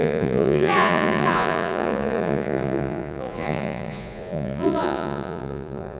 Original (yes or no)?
no